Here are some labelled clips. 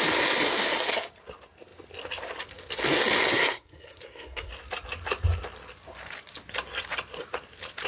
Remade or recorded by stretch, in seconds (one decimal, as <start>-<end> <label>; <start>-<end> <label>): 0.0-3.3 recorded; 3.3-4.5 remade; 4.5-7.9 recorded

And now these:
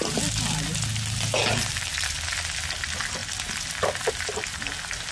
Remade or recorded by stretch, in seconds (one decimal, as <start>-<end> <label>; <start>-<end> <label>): 0.0-5.1 recorded

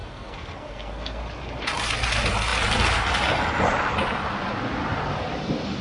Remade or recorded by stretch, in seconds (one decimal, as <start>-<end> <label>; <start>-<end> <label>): 0.0-1.2 remade; 1.2-5.8 recorded